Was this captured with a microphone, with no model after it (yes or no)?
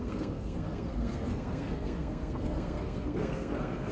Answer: no